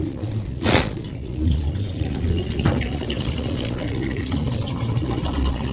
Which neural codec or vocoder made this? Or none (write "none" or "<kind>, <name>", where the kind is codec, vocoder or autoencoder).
vocoder, Vocos